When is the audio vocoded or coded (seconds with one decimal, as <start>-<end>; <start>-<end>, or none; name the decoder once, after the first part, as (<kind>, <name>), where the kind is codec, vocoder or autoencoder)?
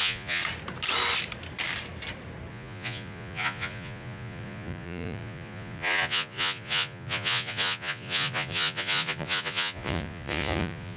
0.0-0.4 (vocoder, Vocos); 2.5-11.0